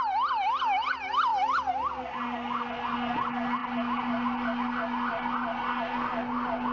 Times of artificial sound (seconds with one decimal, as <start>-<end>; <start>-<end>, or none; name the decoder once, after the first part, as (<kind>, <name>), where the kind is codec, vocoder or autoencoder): none